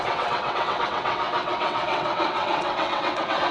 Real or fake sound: fake